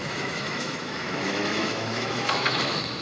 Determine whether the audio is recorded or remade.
remade